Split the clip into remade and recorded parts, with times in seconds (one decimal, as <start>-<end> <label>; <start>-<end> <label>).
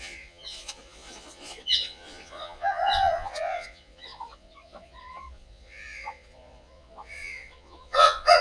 0.0-8.4 remade